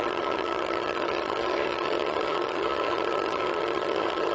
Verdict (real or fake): fake